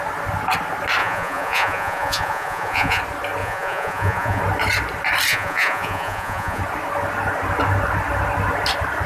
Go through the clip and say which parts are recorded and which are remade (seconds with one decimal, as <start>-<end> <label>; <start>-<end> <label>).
0.0-1.0 recorded; 1.0-3.0 remade; 3.0-3.4 recorded; 3.4-4.4 remade; 4.4-5.3 recorded; 5.3-6.6 remade; 6.6-9.1 recorded